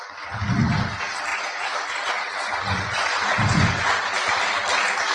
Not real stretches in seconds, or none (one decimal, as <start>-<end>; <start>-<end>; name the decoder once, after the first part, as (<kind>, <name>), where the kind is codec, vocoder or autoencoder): 1.3-4.4 (vocoder, Vocos)